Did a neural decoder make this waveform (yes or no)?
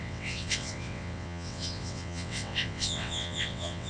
yes